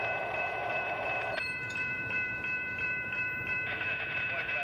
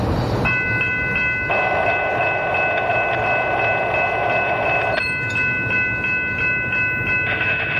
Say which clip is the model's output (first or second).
first